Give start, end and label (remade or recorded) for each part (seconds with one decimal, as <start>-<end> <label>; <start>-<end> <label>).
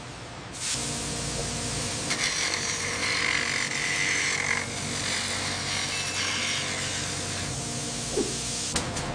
0.0-1.4 recorded; 1.4-3.0 remade; 3.0-9.1 recorded